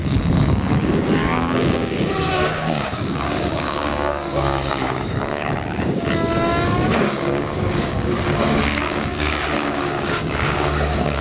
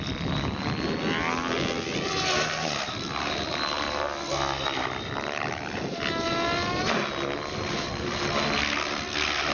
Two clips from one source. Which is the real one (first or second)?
second